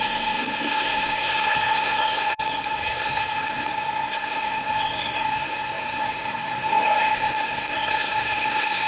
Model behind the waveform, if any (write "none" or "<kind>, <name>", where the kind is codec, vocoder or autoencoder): codec, SNAC